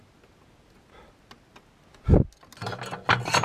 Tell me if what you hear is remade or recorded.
recorded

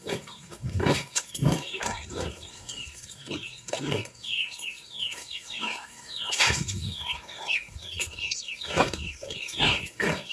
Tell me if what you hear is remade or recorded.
remade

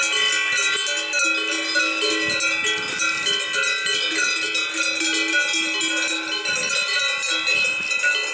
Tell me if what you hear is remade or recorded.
recorded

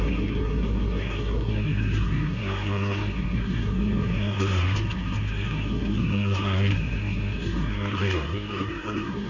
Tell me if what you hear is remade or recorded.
remade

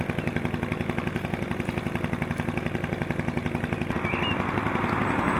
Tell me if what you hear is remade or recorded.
recorded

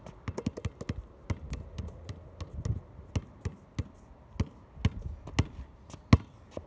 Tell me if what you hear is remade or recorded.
recorded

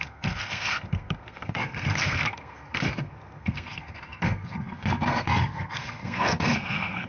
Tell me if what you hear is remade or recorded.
remade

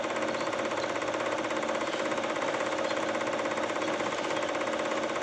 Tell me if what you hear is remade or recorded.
recorded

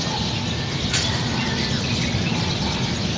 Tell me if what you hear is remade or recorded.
recorded